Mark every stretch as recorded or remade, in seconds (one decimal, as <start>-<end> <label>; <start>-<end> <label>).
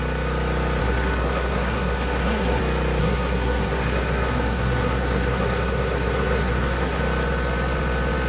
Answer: 0.0-0.8 recorded; 0.8-2.6 remade; 2.6-3.0 recorded; 3.0-7.0 remade; 7.0-8.3 recorded